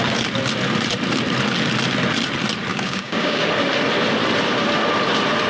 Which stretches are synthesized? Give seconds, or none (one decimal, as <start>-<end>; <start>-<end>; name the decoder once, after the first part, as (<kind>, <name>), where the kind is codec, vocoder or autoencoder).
2.7-3.5 (codec, DAC)